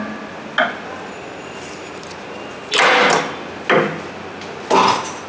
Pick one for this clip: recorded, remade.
recorded